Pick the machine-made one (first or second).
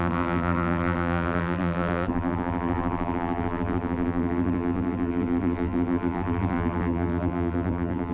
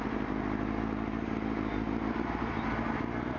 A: first